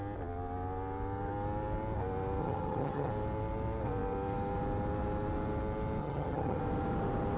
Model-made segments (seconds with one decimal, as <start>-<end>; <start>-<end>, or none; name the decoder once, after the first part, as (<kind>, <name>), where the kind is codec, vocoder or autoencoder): 2.4-3.1 (vocoder, HiFi-GAN); 6.0-6.6